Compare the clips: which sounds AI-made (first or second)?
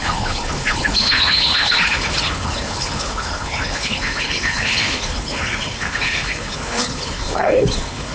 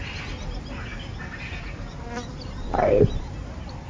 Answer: first